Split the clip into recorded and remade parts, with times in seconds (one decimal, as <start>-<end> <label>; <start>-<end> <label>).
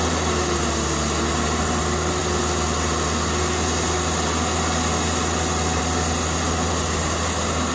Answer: 0.0-7.7 recorded